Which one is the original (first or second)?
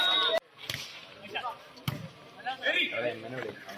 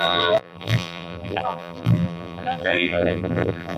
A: first